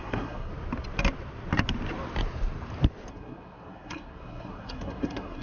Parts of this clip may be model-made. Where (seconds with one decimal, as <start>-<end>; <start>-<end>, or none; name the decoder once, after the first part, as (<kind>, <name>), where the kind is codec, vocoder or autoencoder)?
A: 0.0-0.5 (codec, SNAC); 3.1-5.4